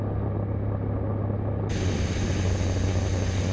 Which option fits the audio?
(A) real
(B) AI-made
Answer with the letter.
A